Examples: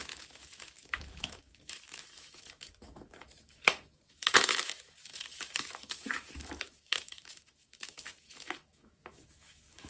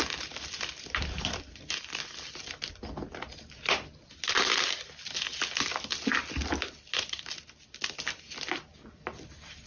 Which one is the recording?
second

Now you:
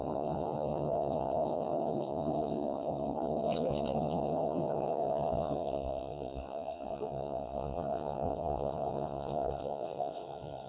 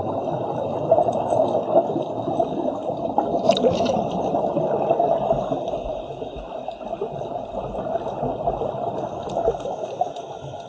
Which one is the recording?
second